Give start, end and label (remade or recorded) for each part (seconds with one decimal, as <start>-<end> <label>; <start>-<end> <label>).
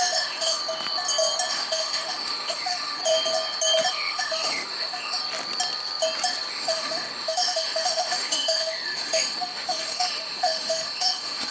0.0-0.6 remade; 0.6-1.5 recorded; 1.5-3.0 remade; 3.0-3.9 recorded; 3.9-5.2 remade; 5.2-6.5 recorded; 6.5-11.5 remade